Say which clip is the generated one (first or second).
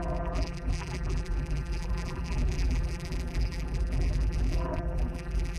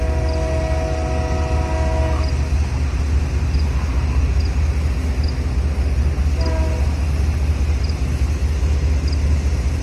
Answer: first